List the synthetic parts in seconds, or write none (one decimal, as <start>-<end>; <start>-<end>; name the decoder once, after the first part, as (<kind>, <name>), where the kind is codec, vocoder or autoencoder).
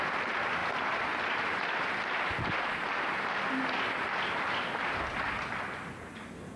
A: none